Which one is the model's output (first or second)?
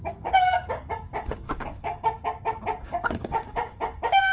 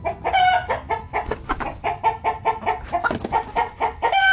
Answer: first